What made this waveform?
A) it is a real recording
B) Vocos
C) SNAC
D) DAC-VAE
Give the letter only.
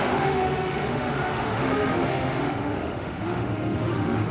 D